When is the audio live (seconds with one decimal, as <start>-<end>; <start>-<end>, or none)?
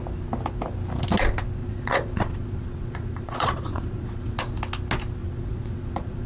0.0-1.6; 4.4-5.2